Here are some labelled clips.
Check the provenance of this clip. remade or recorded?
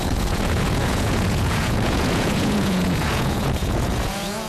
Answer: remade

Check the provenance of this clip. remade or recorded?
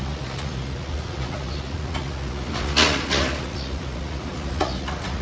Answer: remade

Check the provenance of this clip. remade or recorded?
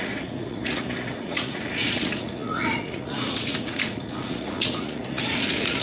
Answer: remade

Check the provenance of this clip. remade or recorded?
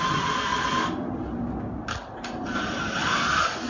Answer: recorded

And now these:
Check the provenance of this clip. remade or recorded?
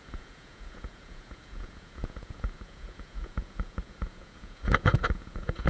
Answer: remade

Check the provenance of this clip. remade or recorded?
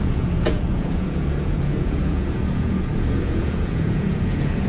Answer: remade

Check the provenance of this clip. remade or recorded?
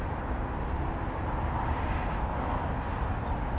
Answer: recorded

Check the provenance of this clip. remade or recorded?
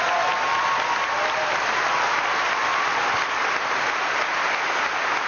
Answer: recorded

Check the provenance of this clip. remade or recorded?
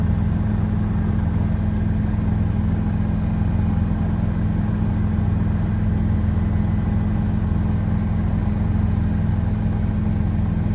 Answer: recorded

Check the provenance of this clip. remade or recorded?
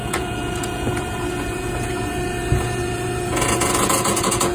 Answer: remade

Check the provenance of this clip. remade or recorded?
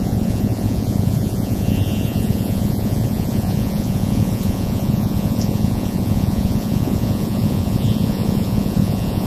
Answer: remade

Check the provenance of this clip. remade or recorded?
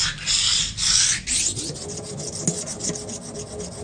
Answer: recorded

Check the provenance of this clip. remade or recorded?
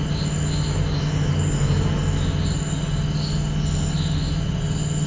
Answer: recorded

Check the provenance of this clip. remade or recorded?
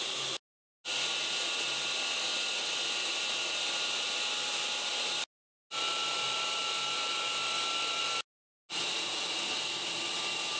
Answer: recorded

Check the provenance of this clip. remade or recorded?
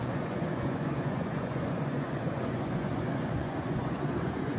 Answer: remade